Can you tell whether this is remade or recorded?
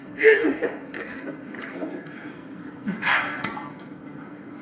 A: remade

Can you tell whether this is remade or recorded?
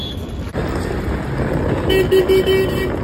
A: recorded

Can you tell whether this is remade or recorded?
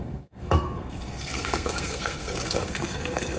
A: remade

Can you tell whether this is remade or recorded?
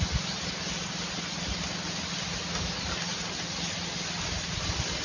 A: recorded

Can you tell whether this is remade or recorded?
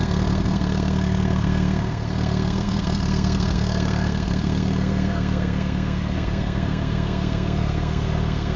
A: remade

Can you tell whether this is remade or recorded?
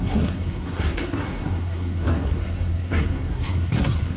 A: remade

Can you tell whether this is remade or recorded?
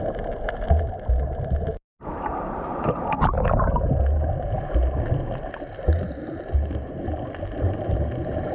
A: recorded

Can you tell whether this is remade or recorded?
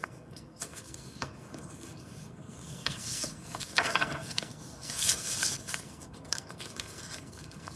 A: remade